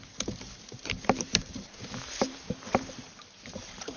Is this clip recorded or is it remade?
remade